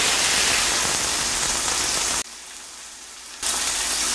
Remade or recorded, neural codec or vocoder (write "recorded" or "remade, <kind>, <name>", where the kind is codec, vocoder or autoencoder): recorded